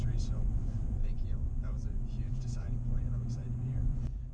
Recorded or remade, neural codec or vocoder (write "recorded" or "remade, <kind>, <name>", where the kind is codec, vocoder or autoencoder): remade, vocoder, Vocos